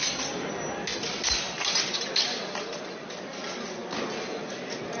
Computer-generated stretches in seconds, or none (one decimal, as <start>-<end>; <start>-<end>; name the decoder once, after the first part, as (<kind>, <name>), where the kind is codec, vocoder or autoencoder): none